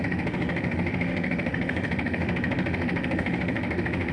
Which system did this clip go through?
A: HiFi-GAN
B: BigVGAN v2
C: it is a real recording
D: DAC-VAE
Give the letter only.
D